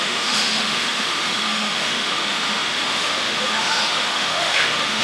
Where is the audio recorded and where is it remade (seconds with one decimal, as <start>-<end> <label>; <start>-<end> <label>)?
0.0-5.0 remade